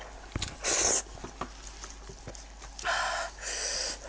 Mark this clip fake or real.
real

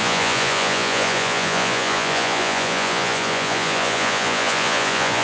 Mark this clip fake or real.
fake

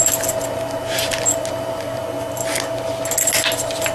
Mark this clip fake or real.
real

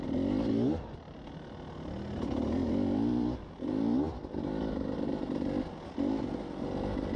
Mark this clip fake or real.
real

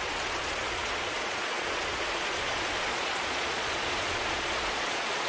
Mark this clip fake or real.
fake